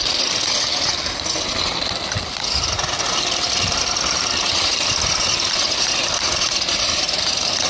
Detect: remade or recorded recorded